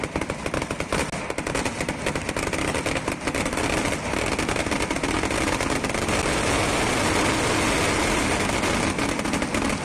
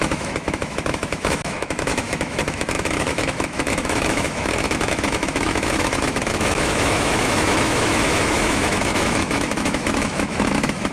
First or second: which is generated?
second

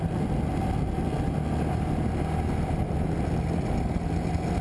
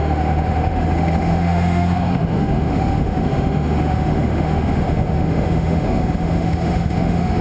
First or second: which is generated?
second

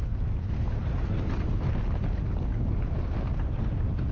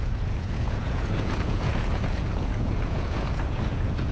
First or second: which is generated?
second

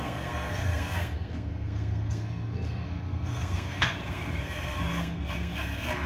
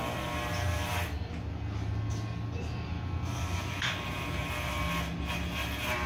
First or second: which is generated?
first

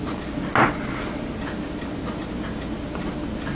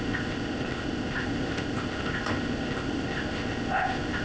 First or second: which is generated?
second